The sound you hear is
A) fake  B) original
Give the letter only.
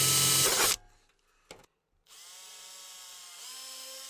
B